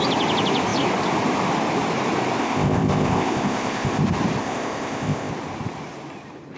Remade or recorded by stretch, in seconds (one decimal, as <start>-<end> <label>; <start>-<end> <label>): 0.0-2.4 recorded; 2.4-4.0 remade; 4.0-4.4 recorded; 4.4-5.3 remade; 5.3-6.6 recorded